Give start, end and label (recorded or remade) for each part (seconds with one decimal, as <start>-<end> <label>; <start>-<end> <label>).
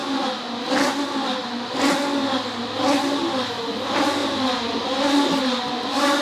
0.0-6.2 recorded